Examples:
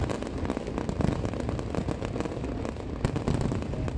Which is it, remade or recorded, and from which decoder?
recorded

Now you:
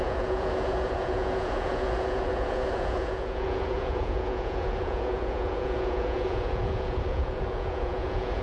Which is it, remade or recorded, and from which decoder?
remade, vocoder, Vocos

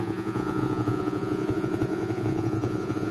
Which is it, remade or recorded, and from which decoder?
remade, vocoder, Vocos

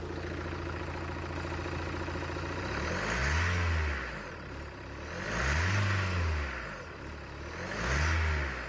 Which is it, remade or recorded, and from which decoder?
recorded